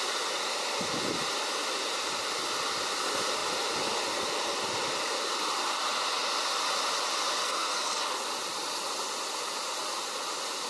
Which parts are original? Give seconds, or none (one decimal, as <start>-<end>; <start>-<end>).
0.0-7.4; 8.0-10.7